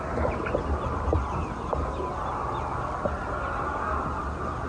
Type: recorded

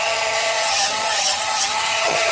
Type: remade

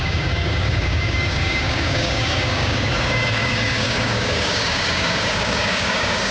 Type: remade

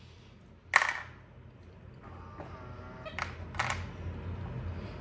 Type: recorded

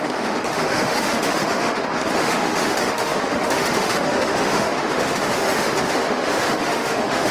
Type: remade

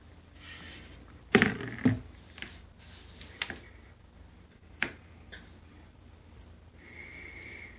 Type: recorded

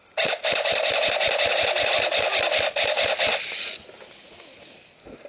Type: recorded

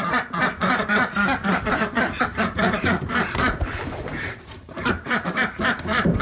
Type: remade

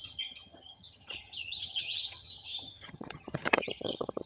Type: remade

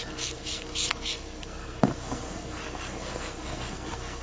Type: remade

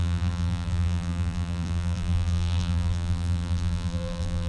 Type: remade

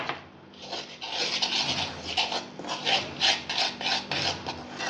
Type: recorded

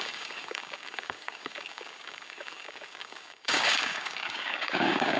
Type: remade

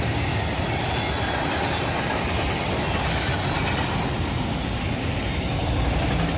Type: recorded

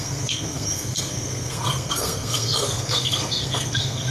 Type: remade